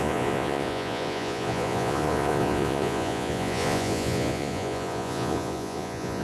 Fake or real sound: fake